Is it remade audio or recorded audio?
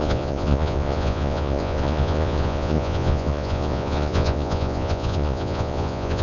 remade